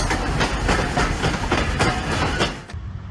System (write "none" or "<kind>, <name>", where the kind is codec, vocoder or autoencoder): none